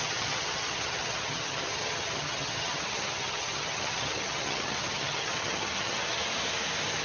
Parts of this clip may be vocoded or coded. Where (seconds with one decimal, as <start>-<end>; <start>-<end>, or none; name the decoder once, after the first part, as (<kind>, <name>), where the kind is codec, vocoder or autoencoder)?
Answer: 0.0-6.2 (vocoder, HiFi-GAN)